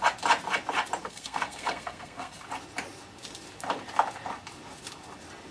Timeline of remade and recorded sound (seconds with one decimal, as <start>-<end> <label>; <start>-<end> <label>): 0.0-1.0 recorded; 1.0-2.4 remade; 2.4-5.5 recorded